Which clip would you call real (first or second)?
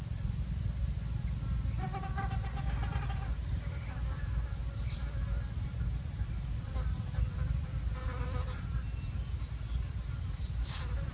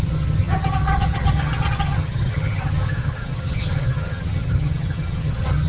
first